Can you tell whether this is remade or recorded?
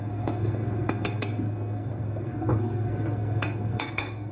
remade